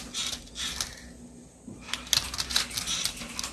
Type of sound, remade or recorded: recorded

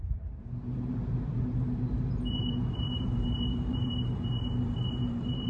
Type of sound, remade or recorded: remade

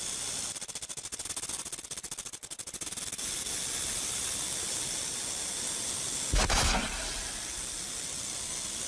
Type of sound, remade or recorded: recorded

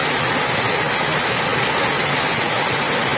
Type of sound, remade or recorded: recorded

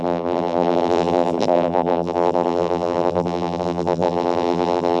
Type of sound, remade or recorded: remade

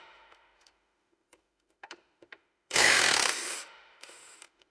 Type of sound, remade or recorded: remade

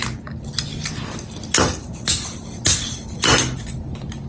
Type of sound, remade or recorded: recorded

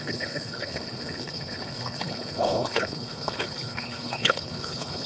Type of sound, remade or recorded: remade